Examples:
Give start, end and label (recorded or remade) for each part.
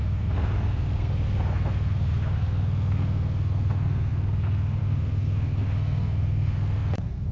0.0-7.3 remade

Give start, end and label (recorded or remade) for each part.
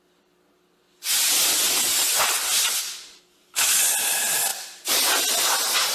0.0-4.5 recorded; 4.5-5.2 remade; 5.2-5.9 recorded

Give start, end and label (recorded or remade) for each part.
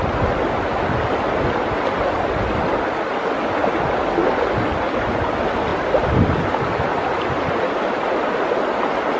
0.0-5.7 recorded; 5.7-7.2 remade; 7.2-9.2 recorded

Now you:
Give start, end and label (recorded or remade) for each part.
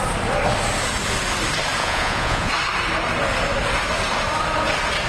0.0-1.8 recorded; 1.8-2.5 remade; 2.5-5.1 recorded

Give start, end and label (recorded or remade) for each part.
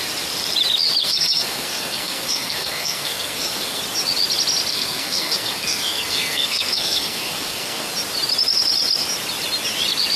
0.0-1.0 recorded; 1.0-3.8 remade; 3.8-4.7 recorded; 4.7-7.9 remade; 7.9-10.2 recorded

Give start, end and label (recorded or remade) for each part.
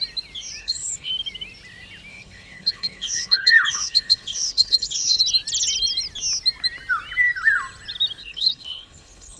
0.0-0.6 recorded; 0.6-1.1 remade; 1.1-2.1 recorded; 2.1-5.2 remade; 5.2-8.2 recorded; 8.2-9.4 remade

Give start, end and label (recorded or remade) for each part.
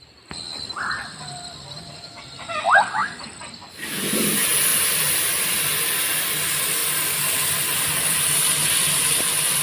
0.0-6.8 recorded; 6.8-7.8 remade; 7.8-9.6 recorded